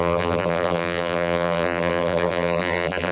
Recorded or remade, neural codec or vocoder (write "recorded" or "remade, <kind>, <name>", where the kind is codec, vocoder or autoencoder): remade, vocoder, BigVGAN v2